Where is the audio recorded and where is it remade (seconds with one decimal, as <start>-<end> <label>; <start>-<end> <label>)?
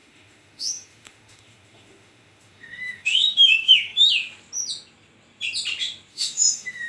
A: 0.0-4.1 remade; 4.1-6.1 recorded; 6.1-6.9 remade